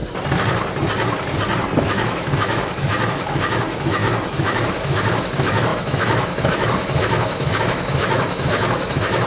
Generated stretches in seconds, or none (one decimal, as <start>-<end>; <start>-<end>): 1.8-9.3